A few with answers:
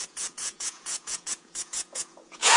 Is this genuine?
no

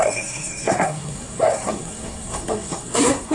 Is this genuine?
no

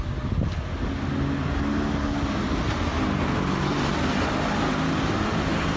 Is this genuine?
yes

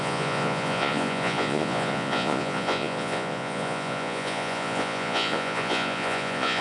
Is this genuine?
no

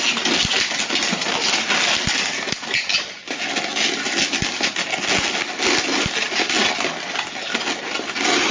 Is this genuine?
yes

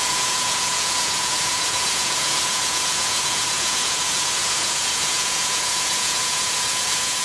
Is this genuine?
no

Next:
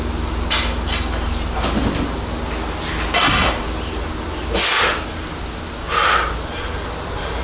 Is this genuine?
yes